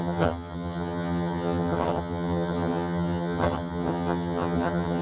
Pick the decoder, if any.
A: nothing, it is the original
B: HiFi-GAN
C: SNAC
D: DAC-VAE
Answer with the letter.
B